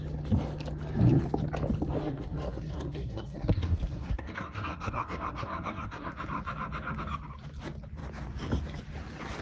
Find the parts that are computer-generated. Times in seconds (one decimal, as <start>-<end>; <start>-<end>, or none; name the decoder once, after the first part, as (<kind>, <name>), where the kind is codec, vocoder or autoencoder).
2.0-6.1 (codec, SNAC)